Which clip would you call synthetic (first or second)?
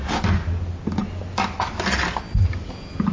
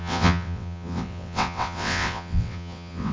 second